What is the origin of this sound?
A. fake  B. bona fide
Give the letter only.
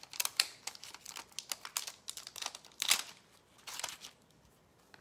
B